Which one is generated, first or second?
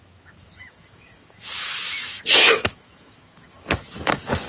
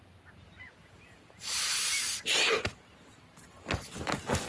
first